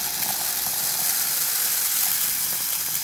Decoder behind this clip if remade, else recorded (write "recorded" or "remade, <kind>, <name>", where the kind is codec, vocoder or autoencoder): recorded